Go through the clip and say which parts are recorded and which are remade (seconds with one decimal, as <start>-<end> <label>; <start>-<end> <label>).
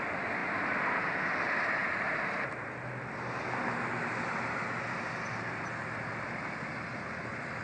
0.0-7.6 recorded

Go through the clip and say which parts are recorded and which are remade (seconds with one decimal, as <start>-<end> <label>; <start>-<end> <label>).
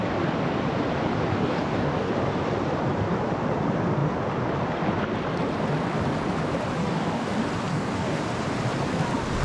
0.0-1.4 recorded; 1.4-2.1 remade; 2.1-6.8 recorded; 6.8-7.3 remade; 7.3-7.7 recorded; 7.7-8.2 remade; 8.2-9.4 recorded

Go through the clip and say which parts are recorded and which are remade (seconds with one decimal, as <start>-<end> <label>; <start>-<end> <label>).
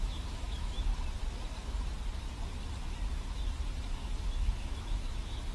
0.0-0.9 remade; 0.9-4.2 recorded; 4.2-5.5 remade